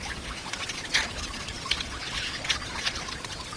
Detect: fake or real fake